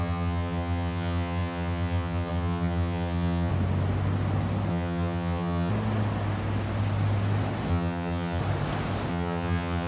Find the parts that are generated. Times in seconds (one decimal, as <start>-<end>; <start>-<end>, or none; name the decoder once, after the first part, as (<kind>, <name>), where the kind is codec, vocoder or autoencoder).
0.0-3.5 (vocoder, HiFi-GAN); 4.7-5.7; 7.7-8.4; 9.1-9.9